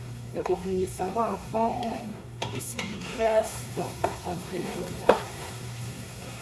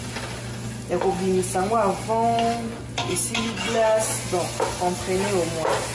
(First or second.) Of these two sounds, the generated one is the first